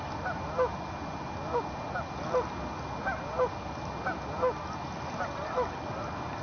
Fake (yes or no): no